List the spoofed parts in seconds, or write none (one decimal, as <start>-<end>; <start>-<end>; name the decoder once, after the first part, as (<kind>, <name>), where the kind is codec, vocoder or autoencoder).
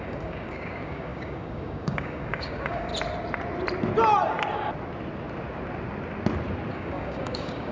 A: 0.0-2.9 (codec, DAC); 6.7-7.7